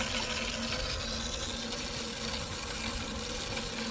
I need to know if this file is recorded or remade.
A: recorded